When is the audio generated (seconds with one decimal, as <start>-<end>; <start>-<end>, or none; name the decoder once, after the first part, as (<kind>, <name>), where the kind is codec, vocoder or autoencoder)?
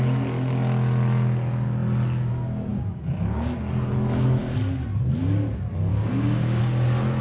5.9-6.6 (codec, DAC)